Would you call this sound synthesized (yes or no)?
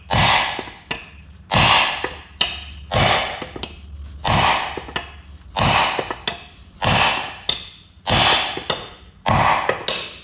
no